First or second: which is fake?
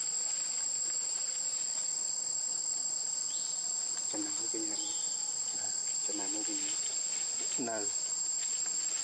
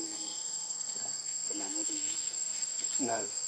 second